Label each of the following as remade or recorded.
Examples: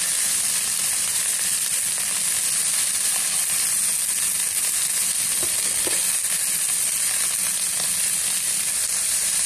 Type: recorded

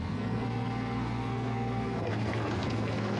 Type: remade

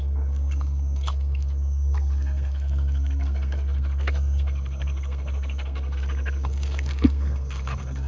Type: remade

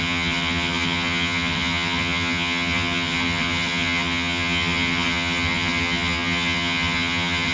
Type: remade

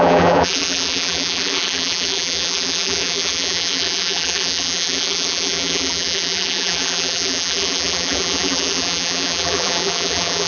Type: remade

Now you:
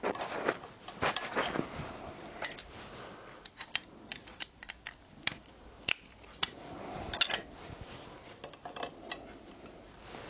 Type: recorded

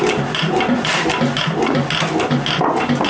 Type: recorded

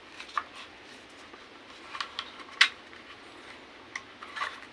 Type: recorded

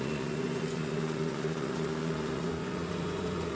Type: remade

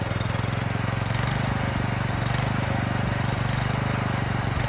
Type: recorded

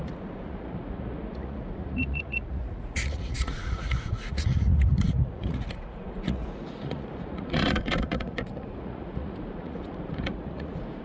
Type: remade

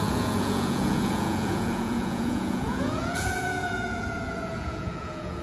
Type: remade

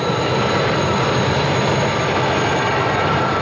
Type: remade